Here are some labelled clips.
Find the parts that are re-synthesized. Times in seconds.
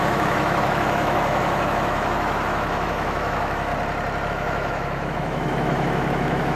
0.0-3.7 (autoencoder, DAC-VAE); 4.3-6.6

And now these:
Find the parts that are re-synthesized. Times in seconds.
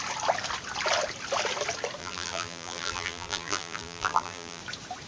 2.0-4.6 (vocoder, BigVGAN v2)